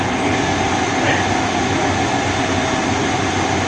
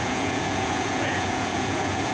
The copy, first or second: second